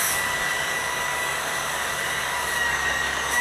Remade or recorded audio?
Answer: remade